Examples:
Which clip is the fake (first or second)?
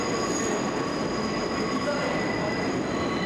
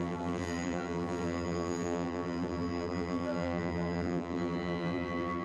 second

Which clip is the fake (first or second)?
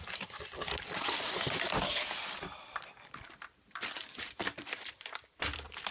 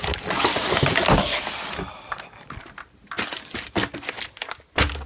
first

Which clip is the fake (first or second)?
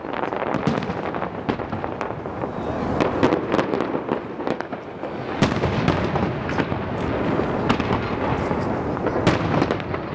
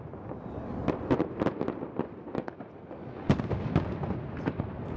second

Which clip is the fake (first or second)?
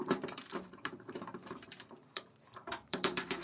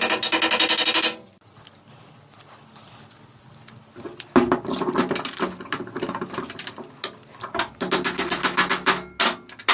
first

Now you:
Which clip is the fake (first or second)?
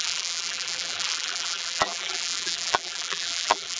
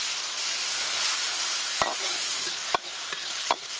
first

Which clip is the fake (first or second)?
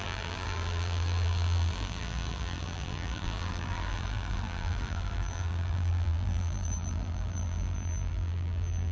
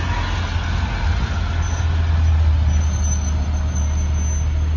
first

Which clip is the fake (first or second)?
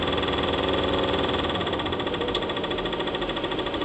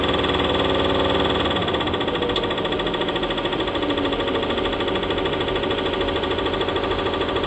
first